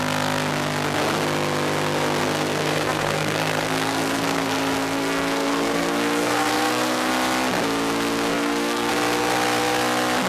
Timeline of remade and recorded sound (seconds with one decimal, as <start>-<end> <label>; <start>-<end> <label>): 0.0-2.2 recorded; 2.2-7.1 remade; 7.1-8.3 recorded; 8.3-8.9 remade; 8.9-10.3 recorded